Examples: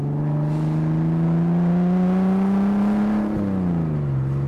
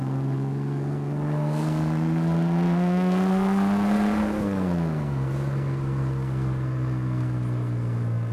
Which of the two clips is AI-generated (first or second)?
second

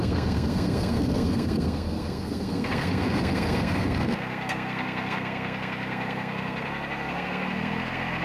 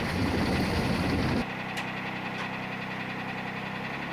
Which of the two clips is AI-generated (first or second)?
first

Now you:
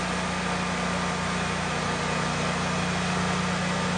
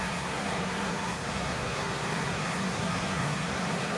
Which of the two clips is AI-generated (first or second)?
second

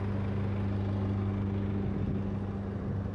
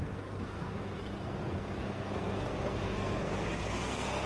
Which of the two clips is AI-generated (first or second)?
second